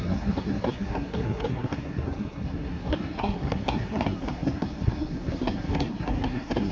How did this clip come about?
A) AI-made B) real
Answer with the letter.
A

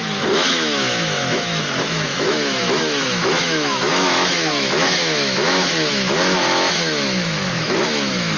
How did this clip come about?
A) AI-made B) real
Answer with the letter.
A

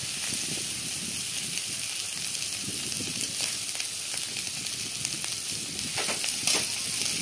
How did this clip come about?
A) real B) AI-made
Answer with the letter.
A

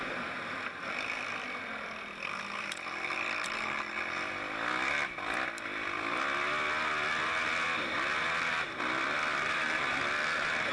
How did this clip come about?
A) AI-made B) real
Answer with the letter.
B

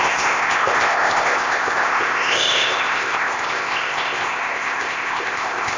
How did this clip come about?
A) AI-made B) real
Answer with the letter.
A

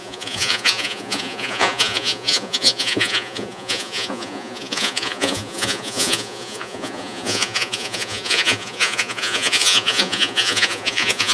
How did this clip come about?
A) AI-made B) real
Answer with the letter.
A